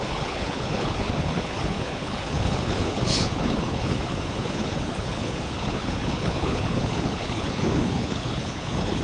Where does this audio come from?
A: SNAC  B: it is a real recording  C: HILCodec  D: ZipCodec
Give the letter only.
C